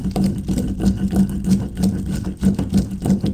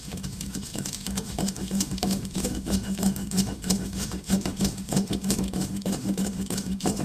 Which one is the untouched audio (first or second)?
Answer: first